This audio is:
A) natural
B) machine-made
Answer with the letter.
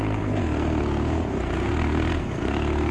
B